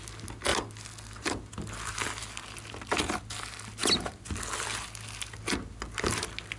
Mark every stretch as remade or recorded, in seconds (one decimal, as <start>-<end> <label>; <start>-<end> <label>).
0.0-6.6 recorded